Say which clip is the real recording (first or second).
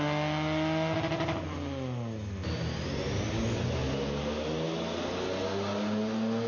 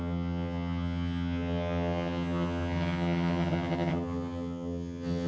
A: first